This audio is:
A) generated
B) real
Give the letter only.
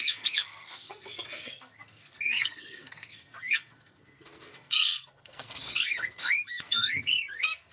A